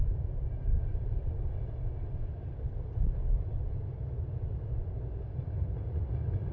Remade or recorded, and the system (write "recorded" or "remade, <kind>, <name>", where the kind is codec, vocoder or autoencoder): recorded